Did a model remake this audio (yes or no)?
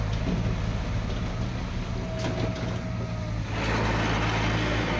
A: no